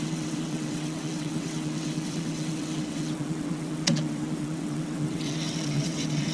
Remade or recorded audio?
remade